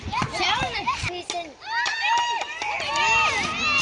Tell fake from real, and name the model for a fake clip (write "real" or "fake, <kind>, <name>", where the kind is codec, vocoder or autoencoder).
real